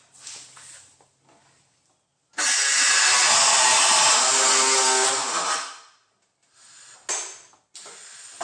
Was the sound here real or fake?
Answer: real